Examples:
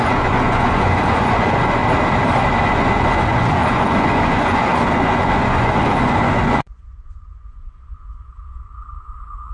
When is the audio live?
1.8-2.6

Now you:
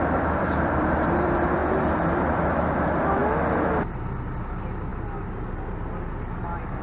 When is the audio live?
1.6-2.2; 3.2-3.8; 4.9-6.8

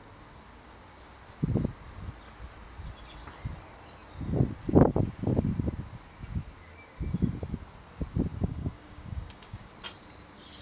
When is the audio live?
0.0-8.3; 9.7-10.6

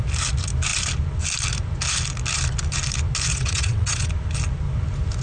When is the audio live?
0.0-3.3; 4.1-5.2

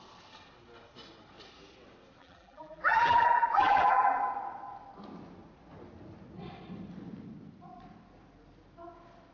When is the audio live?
0.0-2.2; 4.2-9.3

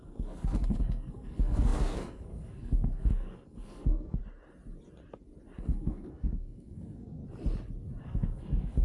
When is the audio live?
4.2-5.6; 7.2-8.0